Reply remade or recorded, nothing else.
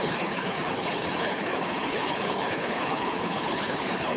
remade